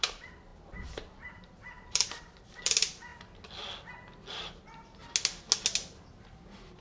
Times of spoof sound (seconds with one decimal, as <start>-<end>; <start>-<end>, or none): 0.0-3.1; 4.3-5.0